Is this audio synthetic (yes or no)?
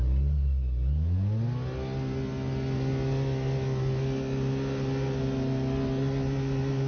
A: no